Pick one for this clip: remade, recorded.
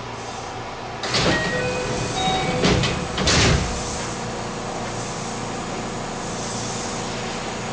recorded